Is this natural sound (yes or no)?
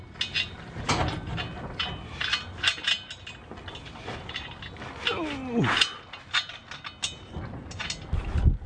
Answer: yes